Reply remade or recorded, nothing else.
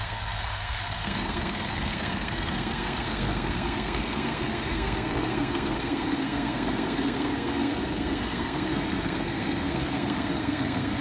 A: remade